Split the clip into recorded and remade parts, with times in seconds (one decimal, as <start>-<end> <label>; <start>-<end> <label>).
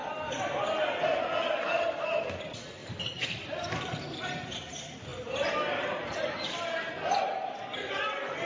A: 0.0-0.7 remade; 0.7-2.8 recorded; 2.8-3.9 remade; 3.9-5.1 recorded; 5.1-6.9 remade; 6.9-8.5 recorded